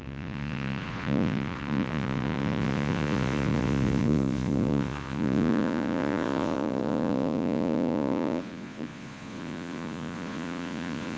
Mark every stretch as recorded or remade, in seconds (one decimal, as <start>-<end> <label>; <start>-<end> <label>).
0.0-11.2 remade